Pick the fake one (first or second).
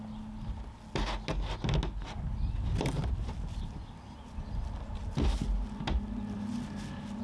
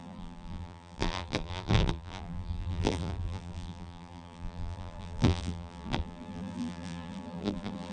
second